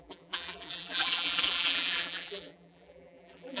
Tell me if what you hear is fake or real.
fake